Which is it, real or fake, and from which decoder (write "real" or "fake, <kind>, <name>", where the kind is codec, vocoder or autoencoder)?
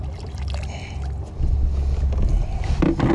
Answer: real